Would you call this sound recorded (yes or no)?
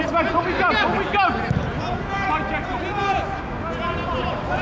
yes